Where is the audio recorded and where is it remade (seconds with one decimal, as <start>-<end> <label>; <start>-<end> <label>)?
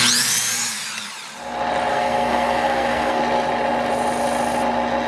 0.0-1.9 recorded; 1.9-3.2 remade; 3.2-5.1 recorded